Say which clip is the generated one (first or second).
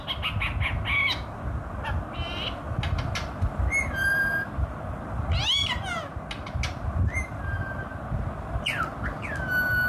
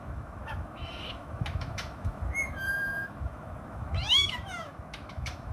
second